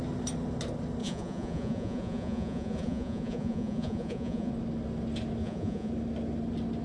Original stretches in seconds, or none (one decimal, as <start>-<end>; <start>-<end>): 0.0-1.0; 4.5-5.4; 5.9-6.8